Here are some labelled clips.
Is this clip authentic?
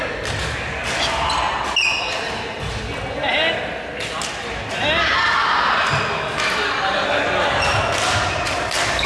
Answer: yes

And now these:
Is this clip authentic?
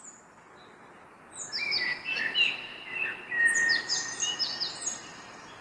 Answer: yes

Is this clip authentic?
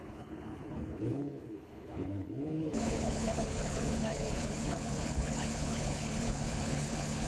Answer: no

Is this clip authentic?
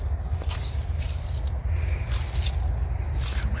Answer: yes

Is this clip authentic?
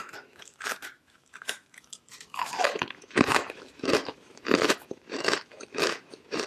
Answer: no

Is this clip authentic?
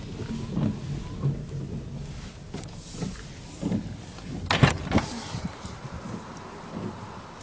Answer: yes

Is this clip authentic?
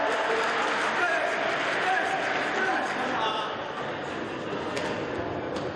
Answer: yes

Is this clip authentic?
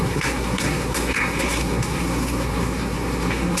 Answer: no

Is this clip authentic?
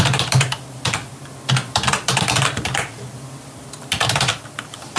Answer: no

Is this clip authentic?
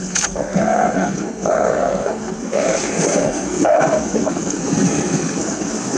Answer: no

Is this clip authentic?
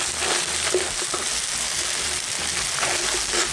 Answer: yes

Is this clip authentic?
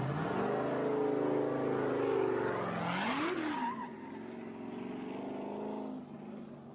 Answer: yes